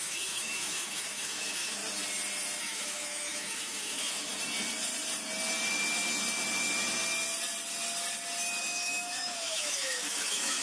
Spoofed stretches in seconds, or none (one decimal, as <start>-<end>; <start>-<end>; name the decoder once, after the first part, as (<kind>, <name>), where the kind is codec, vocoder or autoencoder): 0.0-1.8 (autoencoder, DAC-VAE); 2.6-4.3; 8.6-10.6